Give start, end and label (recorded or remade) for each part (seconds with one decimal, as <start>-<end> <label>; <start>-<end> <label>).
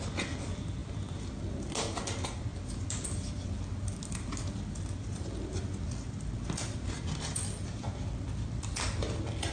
0.0-9.5 recorded